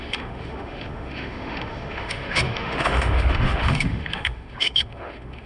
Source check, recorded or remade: remade